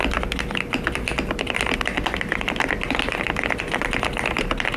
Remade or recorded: recorded